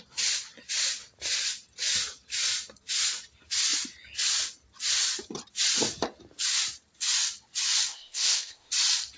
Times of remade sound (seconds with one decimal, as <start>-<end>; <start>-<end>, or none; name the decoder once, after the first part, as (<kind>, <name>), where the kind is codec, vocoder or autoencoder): 7.9-8.7 (codec, ZipCodec)